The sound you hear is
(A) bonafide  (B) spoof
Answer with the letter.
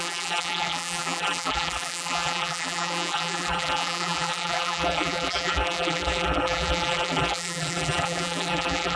B